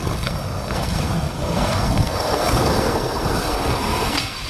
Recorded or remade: remade